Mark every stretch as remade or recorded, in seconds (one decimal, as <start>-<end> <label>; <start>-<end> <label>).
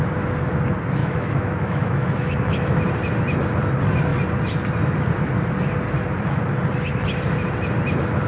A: 0.0-1.0 recorded; 1.0-2.8 remade; 2.8-8.3 recorded